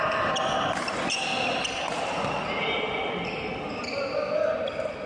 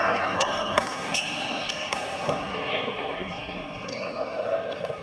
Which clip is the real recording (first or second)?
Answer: first